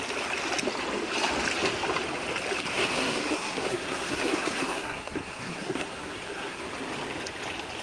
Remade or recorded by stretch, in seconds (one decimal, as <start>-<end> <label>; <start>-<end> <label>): 0.0-2.7 recorded; 2.7-6.6 remade; 6.6-7.8 recorded